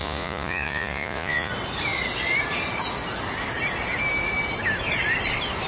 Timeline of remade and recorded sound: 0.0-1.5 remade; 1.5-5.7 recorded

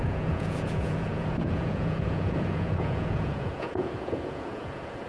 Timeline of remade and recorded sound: 0.0-5.1 remade

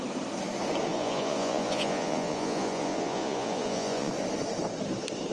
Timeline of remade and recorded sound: 0.0-0.9 recorded; 0.9-4.1 remade; 4.1-5.3 recorded

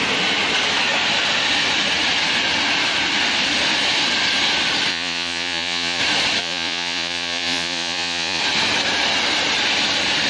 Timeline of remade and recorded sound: 0.0-4.9 recorded; 4.9-6.0 remade; 6.0-6.4 recorded; 6.4-8.4 remade; 8.4-10.3 recorded

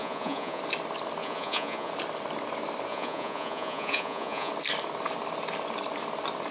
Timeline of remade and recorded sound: 0.0-0.6 remade; 0.6-1.2 recorded; 1.2-1.9 remade; 1.9-2.9 recorded; 2.9-4.5 remade; 4.5-6.5 recorded

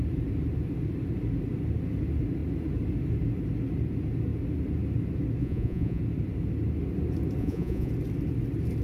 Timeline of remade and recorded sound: 0.0-5.4 recorded; 5.4-6.0 remade; 6.0-7.4 recorded; 7.4-7.9 remade; 7.9-8.8 recorded